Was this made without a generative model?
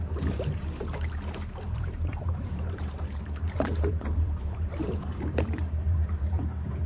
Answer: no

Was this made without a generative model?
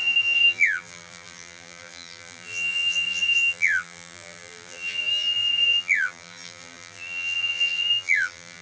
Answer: no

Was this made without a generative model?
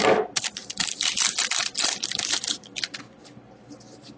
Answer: yes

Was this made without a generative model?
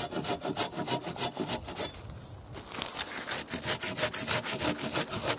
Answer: yes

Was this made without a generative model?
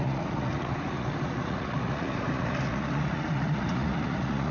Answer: no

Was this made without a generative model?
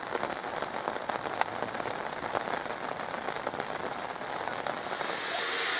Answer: yes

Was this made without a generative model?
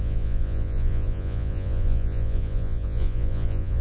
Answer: no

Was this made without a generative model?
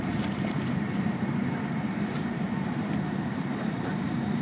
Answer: no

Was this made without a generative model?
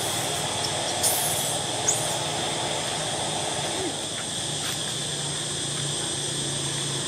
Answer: yes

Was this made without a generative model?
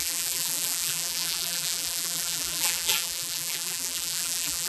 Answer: no